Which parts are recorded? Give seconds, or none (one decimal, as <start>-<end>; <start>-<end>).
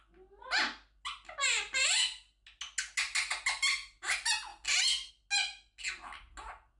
0.0-6.8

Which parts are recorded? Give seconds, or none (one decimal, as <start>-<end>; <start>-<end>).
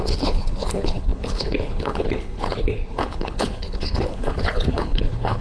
none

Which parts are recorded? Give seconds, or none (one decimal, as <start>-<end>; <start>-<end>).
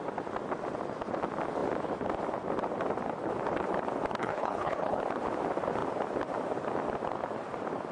0.0-4.2; 5.0-7.9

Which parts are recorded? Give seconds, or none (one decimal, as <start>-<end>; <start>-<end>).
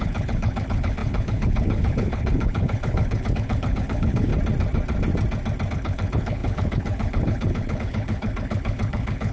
4.3-5.7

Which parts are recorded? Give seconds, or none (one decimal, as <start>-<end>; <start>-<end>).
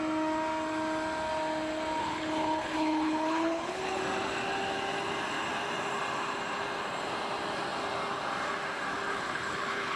0.0-2.0; 4.0-9.1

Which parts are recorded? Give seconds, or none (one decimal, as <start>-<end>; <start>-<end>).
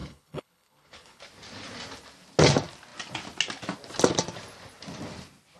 1.2-5.6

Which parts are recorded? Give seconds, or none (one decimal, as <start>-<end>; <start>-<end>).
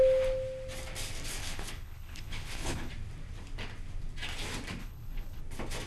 0.0-1.4; 2.9-4.8; 5.4-5.9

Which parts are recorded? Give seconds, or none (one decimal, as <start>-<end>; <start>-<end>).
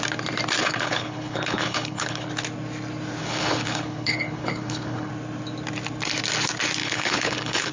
0.0-0.6; 2.3-3.2; 5.1-6.8